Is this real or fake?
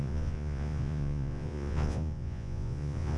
fake